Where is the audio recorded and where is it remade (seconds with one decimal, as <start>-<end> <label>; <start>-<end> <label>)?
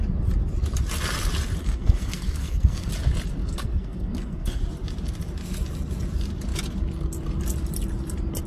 0.0-1.6 recorded; 1.6-2.9 remade; 2.9-3.4 recorded; 3.4-4.6 remade; 4.6-8.5 recorded